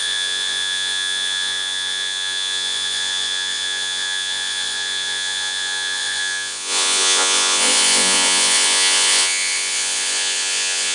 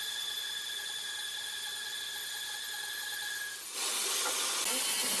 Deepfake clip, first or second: first